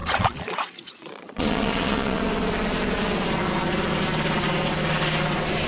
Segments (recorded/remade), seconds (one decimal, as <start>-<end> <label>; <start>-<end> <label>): 0.0-2.2 remade; 2.2-5.7 recorded